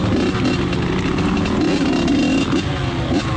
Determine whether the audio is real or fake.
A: real